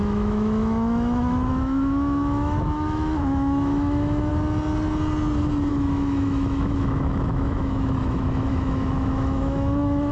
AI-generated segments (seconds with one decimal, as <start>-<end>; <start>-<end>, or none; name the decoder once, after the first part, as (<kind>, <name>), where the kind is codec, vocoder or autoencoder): 0.0-4.3 (autoencoder, DAC-VAE); 5.7-10.1